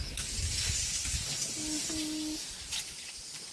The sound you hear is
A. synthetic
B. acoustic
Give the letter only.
B